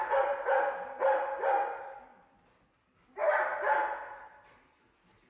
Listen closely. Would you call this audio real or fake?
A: real